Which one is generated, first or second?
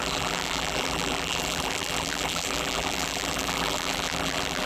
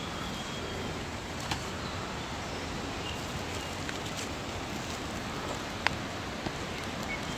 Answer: first